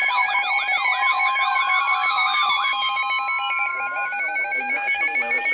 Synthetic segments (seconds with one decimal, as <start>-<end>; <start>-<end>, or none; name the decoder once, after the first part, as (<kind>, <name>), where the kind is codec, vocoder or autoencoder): 0.0-0.5 (autoencoder, DAC-VAE); 1.1-3.0; 3.7-5.0